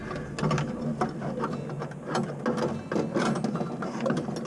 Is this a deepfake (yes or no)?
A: no